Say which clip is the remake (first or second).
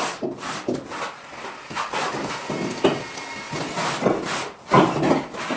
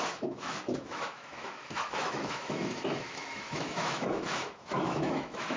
second